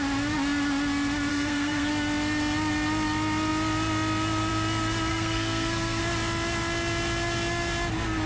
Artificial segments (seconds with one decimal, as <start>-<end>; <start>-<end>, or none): 1.3-1.9; 5.1-6.0